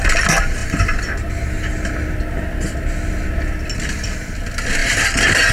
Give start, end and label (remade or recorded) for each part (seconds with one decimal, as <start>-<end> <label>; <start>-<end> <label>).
0.0-4.8 recorded; 4.8-5.5 remade

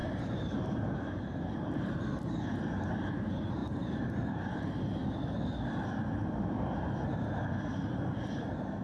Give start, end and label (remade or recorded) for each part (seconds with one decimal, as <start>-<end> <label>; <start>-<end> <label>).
0.0-2.0 remade; 2.0-3.6 recorded; 3.6-4.6 remade; 4.6-8.8 recorded

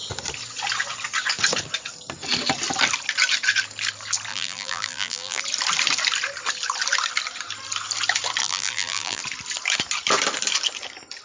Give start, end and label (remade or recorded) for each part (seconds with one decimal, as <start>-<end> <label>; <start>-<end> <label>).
0.0-4.3 recorded; 4.3-5.4 remade; 5.4-8.4 recorded; 8.4-9.2 remade; 9.2-11.2 recorded

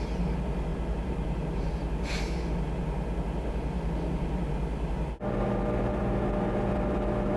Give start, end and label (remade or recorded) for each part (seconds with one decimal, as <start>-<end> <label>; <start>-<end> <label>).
0.0-0.7 recorded; 0.7-1.7 remade; 1.7-7.4 recorded

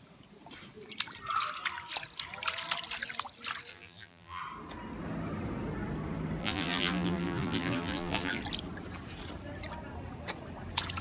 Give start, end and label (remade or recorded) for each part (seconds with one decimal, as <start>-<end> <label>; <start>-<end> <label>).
0.0-3.7 recorded; 3.7-4.4 remade; 4.4-6.4 recorded; 6.4-8.4 remade; 8.4-11.0 recorded